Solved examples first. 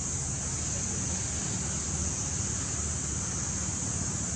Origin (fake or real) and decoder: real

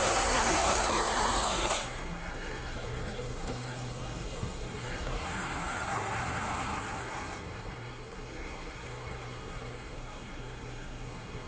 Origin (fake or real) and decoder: fake, codec, SNAC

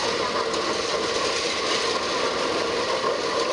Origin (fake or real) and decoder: real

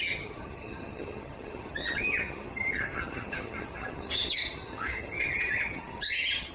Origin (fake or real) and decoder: fake, vocoder, HiFi-GAN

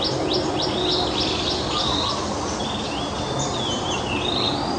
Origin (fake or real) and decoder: real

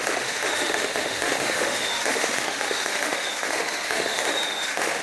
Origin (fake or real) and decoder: fake, autoencoder, DAC-VAE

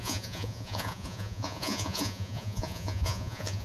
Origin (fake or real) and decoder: fake, vocoder, Vocos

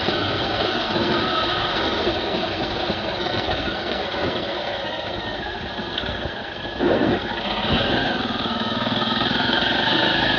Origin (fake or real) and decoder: fake, codec, SNAC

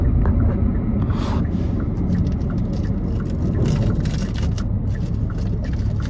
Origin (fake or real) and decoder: real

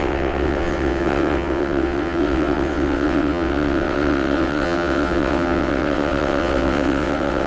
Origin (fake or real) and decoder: fake, vocoder, WaveNeXt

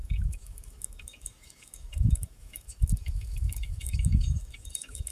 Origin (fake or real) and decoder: fake, autoencoder, DAC-VAE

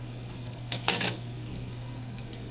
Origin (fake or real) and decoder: fake, codec, SNAC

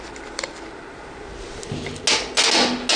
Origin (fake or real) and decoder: real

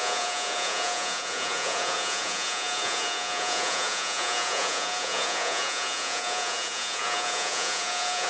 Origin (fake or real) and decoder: fake, vocoder, Vocos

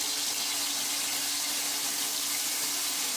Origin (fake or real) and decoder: real